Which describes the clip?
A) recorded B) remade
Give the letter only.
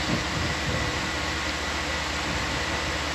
A